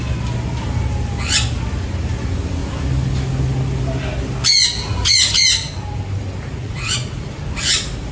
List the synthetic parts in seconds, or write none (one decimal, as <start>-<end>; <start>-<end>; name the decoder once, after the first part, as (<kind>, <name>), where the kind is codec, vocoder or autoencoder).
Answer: 4.8-5.3 (vocoder, Vocos); 6.6-7.4